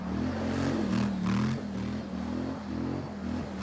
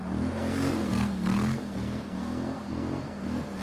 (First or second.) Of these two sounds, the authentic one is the first